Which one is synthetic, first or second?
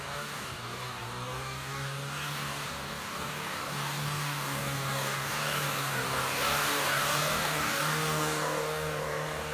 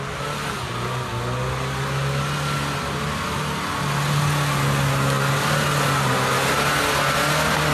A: first